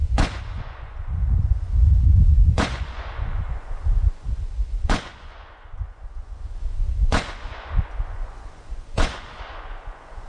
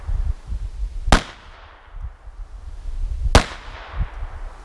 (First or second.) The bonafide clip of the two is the second